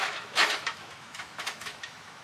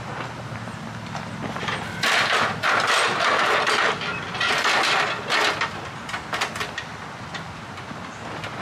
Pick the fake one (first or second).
first